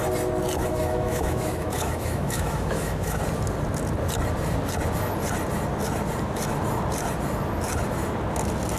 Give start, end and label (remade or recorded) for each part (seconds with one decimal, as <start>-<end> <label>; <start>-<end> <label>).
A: 0.0-0.6 recorded; 0.6-3.2 remade; 3.2-8.8 recorded

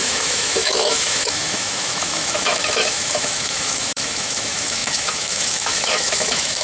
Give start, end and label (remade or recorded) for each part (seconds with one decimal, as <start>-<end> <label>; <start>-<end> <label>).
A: 0.0-6.6 remade

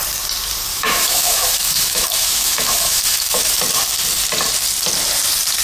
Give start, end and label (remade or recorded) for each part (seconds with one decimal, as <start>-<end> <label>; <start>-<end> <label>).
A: 0.0-0.7 recorded; 0.7-3.6 remade; 3.6-5.6 recorded

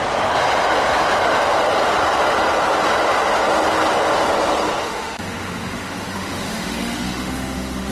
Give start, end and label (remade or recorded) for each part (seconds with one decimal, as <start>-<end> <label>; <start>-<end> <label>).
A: 0.0-4.8 recorded; 4.8-7.9 remade

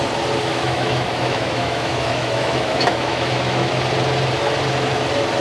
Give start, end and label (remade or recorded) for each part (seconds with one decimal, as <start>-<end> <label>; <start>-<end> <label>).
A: 0.0-0.5 recorded; 0.5-3.7 remade; 3.7-5.4 recorded

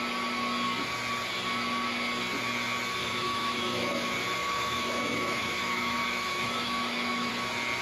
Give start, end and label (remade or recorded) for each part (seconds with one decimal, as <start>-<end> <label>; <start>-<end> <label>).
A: 0.0-3.0 recorded; 3.0-4.0 remade; 4.0-4.4 recorded; 4.4-7.3 remade; 7.3-7.8 recorded

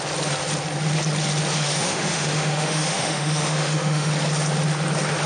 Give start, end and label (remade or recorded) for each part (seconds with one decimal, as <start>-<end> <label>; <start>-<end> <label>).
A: 0.0-1.5 recorded; 1.5-4.1 remade; 4.1-5.3 recorded

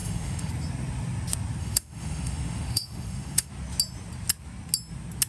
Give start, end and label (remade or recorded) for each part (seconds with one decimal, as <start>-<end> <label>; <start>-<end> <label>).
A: 0.0-0.5 remade; 0.5-1.6 recorded; 1.6-3.5 remade; 3.5-5.3 recorded